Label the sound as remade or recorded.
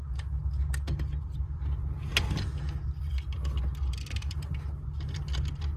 recorded